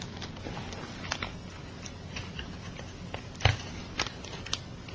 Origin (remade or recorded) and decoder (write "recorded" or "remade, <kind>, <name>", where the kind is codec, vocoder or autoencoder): recorded